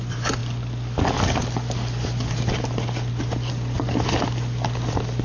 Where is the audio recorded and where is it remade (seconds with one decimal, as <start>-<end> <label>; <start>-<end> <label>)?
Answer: 0.0-5.2 recorded